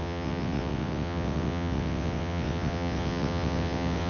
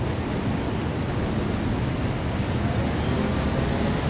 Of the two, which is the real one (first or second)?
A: second